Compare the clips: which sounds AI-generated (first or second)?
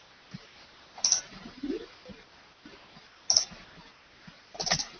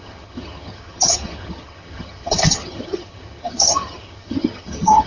second